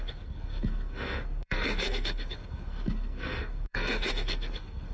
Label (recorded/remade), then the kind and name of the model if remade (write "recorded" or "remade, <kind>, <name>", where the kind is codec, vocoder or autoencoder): remade, codec, SNAC